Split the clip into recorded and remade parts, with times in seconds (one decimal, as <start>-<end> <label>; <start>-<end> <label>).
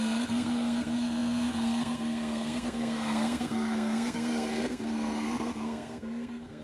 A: 0.0-6.6 remade